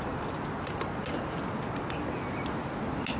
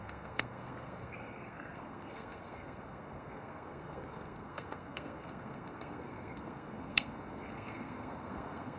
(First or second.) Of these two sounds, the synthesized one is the second